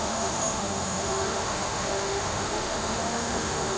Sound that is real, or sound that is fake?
fake